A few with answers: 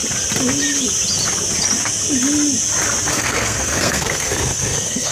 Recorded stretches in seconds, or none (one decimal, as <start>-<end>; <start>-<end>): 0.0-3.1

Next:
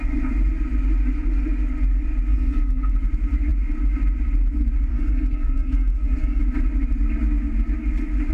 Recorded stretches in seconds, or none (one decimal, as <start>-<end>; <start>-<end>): 0.0-2.3; 2.9-4.9; 6.4-8.3

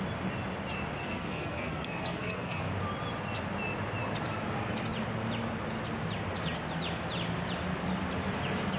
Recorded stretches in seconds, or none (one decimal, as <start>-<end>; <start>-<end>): 0.0-1.0; 2.7-8.8

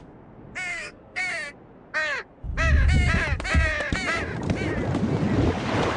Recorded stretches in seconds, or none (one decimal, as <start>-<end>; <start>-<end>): 0.0-0.7; 1.2-6.0